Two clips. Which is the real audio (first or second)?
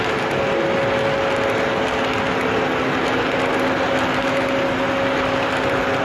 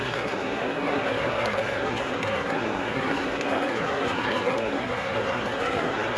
first